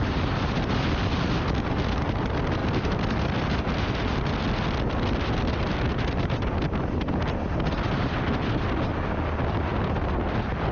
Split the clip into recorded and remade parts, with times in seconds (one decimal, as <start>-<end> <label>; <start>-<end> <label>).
0.0-2.6 recorded; 2.6-3.6 remade; 3.6-10.7 recorded